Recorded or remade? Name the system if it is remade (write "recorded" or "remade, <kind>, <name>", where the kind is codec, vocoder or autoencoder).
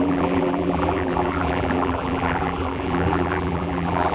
remade, vocoder, BigVGAN v2